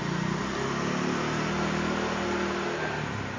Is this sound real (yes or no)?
yes